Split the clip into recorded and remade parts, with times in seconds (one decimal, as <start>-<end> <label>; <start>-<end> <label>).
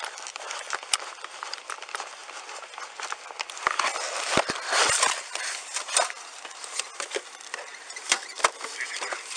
0.0-2.2 remade; 2.2-7.3 recorded; 7.3-9.4 remade